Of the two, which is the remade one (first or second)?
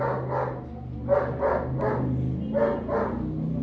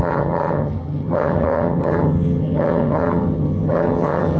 second